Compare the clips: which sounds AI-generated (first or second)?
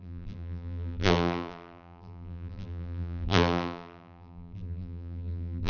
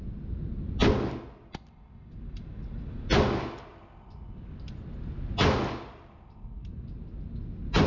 first